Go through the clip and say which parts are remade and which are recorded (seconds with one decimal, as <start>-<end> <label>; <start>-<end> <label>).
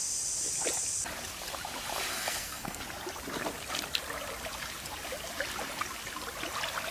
0.0-2.1 recorded; 2.1-2.8 remade; 2.8-6.9 recorded